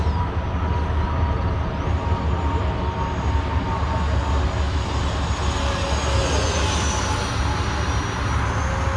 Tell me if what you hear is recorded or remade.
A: recorded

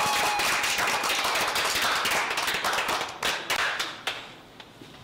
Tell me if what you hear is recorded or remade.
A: recorded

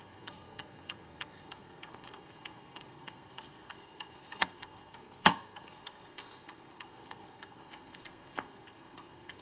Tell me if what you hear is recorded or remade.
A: remade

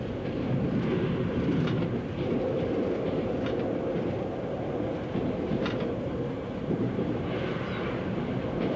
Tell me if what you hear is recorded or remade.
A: recorded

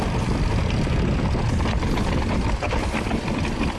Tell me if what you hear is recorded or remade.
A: recorded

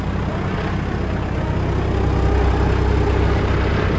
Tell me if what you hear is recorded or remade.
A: recorded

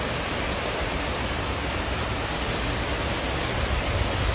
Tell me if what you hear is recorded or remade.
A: recorded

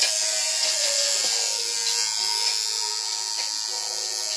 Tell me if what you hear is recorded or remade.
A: recorded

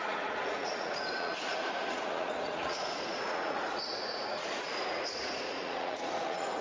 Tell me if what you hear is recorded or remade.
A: remade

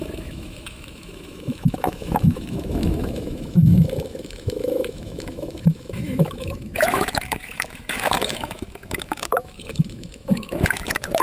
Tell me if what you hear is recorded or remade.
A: remade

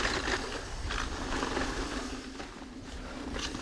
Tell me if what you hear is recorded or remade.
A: recorded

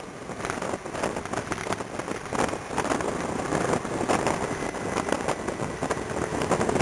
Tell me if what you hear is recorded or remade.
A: recorded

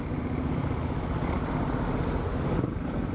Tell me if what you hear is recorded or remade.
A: recorded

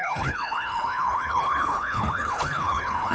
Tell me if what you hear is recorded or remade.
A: remade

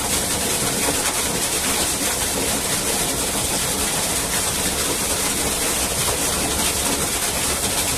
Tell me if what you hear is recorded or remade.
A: remade